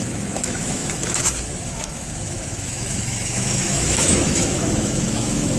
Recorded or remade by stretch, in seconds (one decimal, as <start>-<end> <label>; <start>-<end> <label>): 0.0-5.6 remade